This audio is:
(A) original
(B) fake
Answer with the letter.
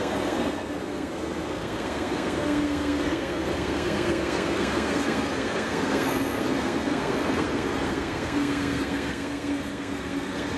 B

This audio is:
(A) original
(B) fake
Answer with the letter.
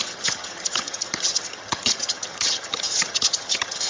B